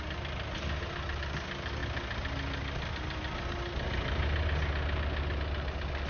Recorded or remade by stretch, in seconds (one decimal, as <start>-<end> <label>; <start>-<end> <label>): 0.0-6.1 recorded